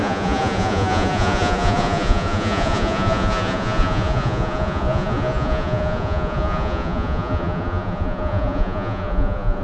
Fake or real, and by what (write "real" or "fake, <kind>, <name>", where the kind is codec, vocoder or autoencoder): fake, vocoder, Vocos